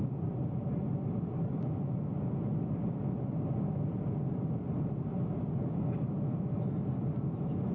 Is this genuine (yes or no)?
yes